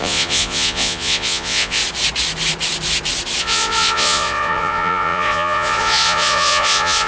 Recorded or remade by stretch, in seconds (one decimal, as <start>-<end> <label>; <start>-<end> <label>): 0.0-1.8 remade; 1.8-3.4 recorded; 3.4-7.1 remade